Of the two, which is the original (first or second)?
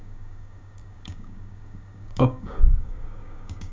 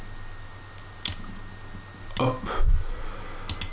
second